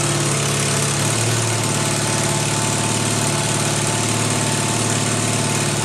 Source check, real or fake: real